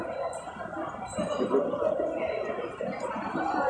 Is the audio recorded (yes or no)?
yes